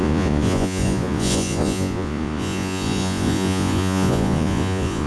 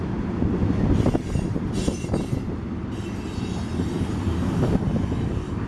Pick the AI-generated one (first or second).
first